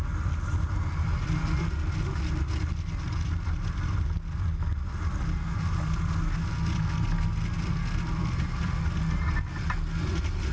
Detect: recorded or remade recorded